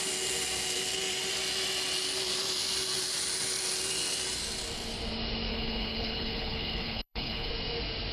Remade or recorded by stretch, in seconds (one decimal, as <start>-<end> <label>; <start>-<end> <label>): 0.0-5.5 recorded; 5.5-7.5 remade; 7.5-8.1 recorded